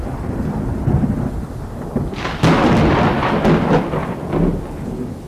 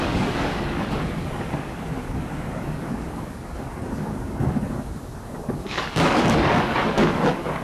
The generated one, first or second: second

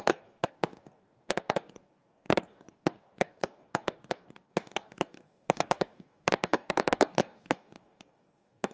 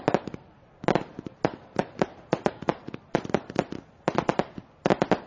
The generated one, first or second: first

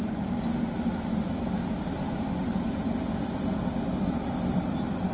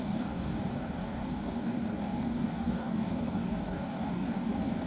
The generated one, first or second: second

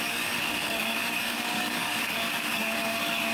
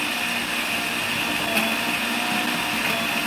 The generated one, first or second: first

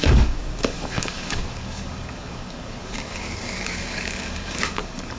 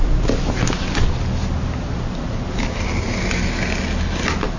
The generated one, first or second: first